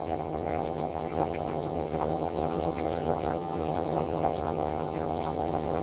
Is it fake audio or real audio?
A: fake